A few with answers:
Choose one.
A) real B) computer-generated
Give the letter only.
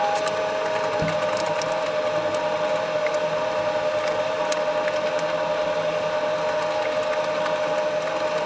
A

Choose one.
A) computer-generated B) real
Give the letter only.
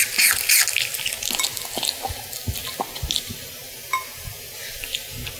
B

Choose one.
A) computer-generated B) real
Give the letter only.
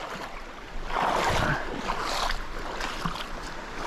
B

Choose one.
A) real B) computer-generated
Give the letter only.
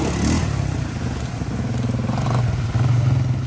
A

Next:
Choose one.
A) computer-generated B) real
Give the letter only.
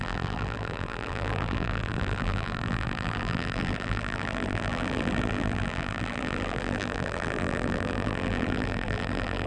A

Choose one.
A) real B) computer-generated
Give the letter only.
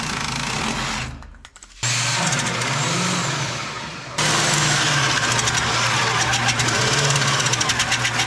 A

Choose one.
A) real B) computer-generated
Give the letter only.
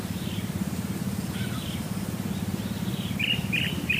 B